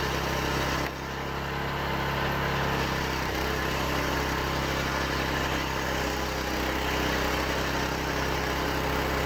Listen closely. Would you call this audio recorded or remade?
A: recorded